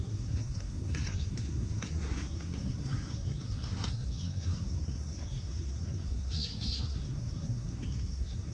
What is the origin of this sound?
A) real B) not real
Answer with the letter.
B